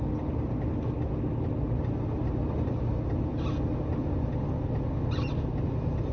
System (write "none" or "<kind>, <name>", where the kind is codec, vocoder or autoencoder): none